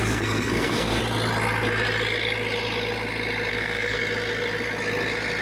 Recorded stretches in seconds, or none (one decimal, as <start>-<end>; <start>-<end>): 1.0-3.5; 4.0-5.4